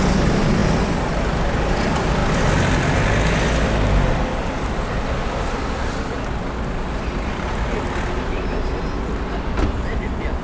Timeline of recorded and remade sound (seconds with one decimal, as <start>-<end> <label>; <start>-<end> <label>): 0.0-10.4 recorded